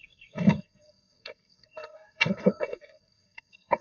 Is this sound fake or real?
fake